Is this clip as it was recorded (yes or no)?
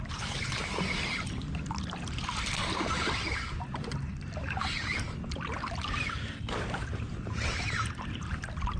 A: yes